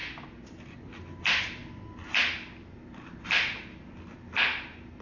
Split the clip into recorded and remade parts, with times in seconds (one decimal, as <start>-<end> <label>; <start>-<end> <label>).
0.0-5.0 recorded